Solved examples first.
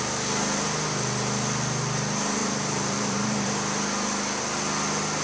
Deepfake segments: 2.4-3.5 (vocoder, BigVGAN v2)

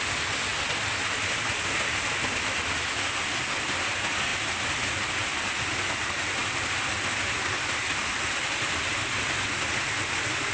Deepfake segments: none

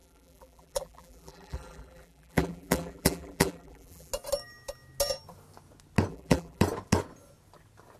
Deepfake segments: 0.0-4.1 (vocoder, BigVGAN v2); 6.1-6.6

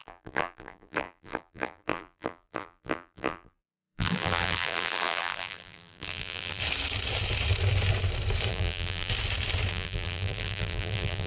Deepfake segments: 0.0-6.6 (vocoder, BigVGAN v2); 8.5-9.1; 9.7-11.3

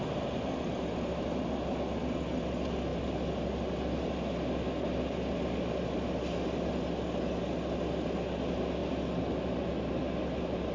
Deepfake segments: none

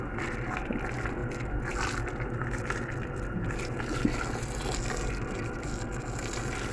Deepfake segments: none

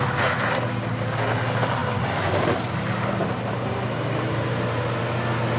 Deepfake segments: 1.8-5.0 (vocoder, BigVGAN v2)

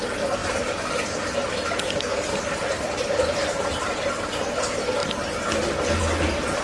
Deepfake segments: 2.6-4.0 (vocoder, BigVGAN v2)